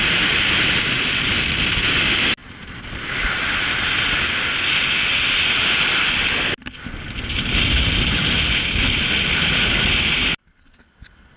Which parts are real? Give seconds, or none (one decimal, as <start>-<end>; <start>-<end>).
0.0-11.4